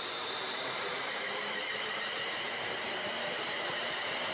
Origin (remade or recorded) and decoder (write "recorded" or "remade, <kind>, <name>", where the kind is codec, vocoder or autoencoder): remade, vocoder, BigVGAN v2